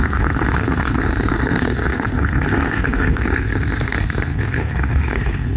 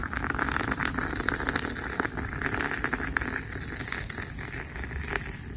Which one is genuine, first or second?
second